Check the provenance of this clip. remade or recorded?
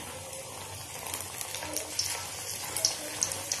recorded